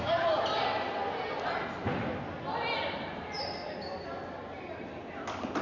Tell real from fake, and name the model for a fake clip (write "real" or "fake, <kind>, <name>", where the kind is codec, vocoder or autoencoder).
real